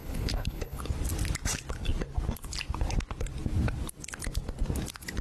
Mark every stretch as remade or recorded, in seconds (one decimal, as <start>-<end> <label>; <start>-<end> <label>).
0.0-0.8 remade; 0.8-5.2 recorded